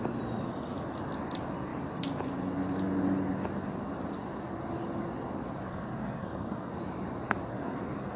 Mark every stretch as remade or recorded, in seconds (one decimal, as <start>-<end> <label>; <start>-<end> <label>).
0.0-5.7 recorded; 5.7-6.7 remade; 6.7-7.5 recorded; 7.5-8.2 remade